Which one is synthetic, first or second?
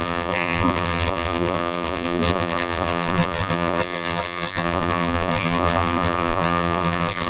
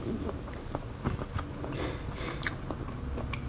first